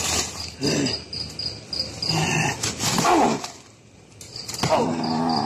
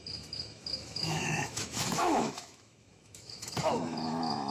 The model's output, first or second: second